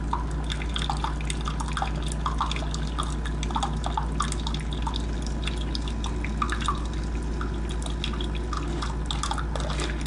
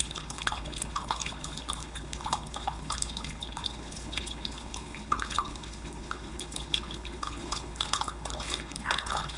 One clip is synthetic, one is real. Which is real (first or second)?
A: first